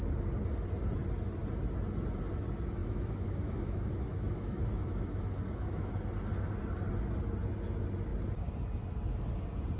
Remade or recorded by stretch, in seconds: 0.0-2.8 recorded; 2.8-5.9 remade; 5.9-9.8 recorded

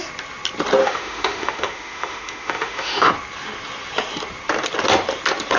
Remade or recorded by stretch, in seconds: 0.0-0.8 recorded; 0.8-3.1 remade; 3.1-5.6 recorded

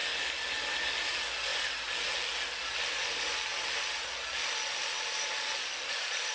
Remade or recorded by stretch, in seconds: 0.0-6.3 recorded